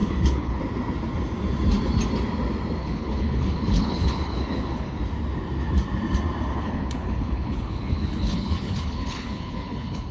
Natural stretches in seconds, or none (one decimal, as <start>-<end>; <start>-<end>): 0.6-2.8; 5.0-6.5